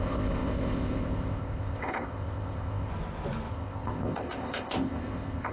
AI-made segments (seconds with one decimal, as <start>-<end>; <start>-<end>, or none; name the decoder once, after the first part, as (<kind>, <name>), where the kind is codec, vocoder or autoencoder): 0.0-2.9 (codec, ZipCodec); 3.5-5.5